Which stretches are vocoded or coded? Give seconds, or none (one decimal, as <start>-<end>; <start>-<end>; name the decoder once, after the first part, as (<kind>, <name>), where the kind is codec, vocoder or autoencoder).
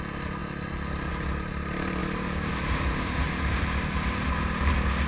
2.0-2.5 (codec, DAC)